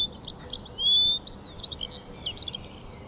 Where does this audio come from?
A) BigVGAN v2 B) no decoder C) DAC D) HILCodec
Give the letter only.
B